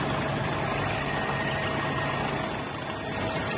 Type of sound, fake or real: real